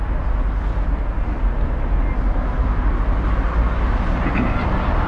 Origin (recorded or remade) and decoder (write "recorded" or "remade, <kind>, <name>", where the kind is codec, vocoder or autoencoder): recorded